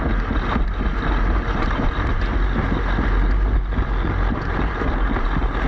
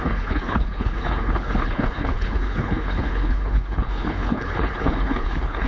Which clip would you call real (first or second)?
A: first